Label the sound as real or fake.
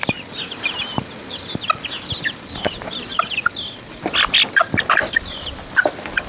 real